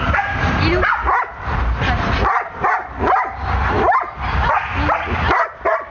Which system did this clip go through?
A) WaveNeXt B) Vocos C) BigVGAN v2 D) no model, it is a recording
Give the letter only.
D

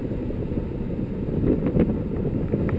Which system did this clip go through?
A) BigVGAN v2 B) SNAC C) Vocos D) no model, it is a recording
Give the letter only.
D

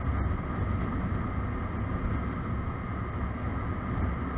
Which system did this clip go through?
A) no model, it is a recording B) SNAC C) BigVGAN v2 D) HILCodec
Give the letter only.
A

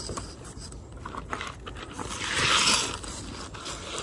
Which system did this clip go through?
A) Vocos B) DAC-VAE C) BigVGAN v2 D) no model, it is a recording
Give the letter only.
D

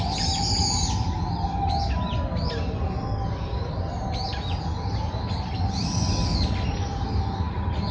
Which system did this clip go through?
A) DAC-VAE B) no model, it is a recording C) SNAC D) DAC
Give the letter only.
B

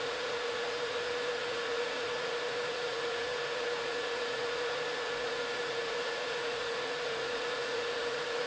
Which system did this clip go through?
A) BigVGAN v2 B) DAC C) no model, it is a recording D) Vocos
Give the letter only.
D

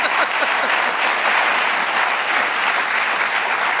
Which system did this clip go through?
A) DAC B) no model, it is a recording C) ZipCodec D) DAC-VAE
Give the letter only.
B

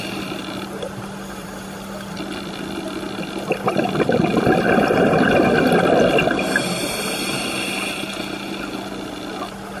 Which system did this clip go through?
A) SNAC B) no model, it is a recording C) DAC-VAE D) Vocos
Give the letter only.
B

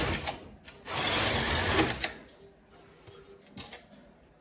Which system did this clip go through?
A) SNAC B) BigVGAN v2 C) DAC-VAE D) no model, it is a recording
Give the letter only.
D